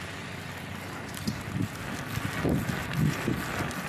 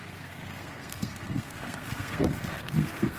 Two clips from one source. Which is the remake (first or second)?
second